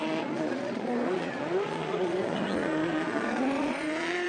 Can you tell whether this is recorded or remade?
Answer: remade